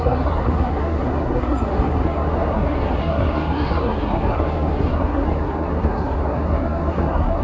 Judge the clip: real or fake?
fake